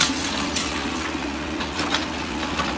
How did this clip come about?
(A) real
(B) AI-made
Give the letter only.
B